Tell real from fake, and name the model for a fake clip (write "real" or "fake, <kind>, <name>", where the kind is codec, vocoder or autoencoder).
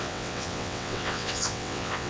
fake, vocoder, WaveNeXt